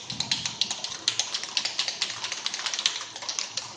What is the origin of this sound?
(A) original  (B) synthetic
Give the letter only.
A